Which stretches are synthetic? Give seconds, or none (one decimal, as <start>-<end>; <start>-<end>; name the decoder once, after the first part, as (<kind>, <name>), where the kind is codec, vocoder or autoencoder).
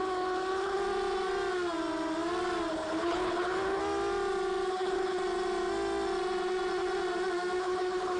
0.0-0.8 (codec, HILCodec); 2.7-3.8; 4.7-5.2; 7.6-8.2